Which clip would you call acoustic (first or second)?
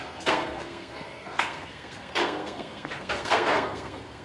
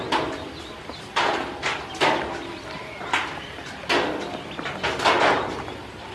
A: second